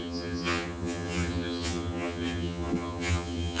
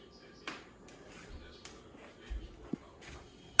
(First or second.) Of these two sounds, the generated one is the first